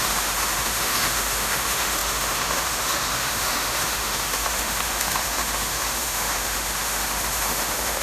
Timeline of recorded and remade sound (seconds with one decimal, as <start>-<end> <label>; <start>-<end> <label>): 0.0-8.0 remade